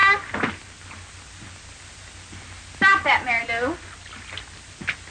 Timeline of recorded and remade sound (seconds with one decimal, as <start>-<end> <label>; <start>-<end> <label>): 0.0-5.1 recorded